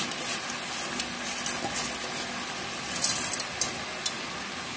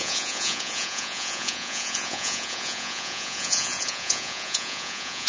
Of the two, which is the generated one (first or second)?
second